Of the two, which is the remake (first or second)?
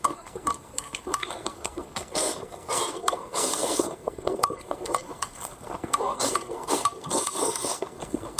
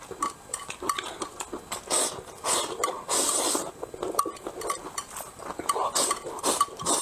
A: first